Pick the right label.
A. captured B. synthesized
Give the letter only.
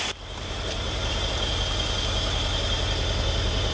B